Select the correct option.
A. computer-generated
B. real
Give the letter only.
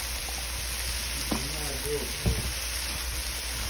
B